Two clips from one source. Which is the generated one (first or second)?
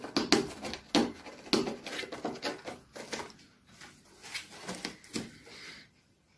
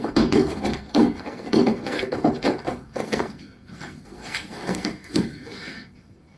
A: second